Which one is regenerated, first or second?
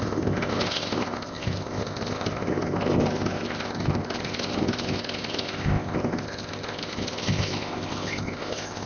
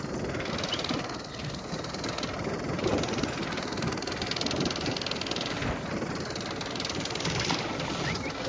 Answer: first